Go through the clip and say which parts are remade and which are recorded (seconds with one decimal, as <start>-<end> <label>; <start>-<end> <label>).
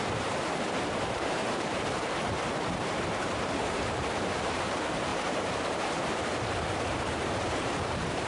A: 0.0-8.3 remade